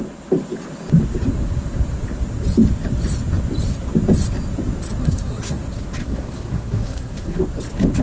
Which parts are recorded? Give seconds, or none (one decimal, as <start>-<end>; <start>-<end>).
0.0-5.0; 5.6-6.0; 7.4-8.0